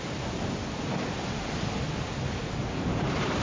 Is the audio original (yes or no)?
yes